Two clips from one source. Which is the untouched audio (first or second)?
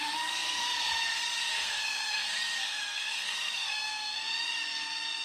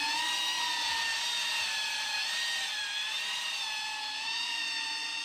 second